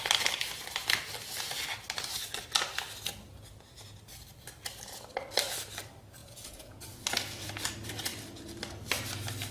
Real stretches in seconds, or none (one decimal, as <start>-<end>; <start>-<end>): 0.0-6.2; 6.8-9.5